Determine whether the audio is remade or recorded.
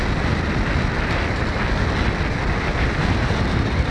recorded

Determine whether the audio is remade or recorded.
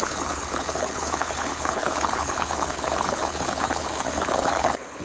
remade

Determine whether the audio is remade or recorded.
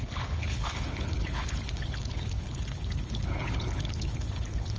remade